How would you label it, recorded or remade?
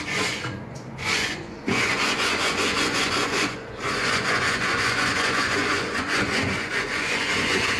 remade